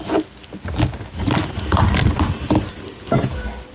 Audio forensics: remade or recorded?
recorded